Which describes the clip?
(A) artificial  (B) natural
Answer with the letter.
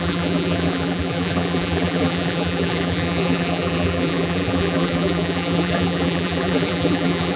A